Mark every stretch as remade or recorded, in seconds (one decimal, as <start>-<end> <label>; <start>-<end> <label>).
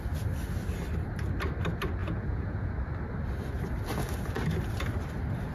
0.0-2.0 recorded; 2.0-2.7 remade; 2.7-5.5 recorded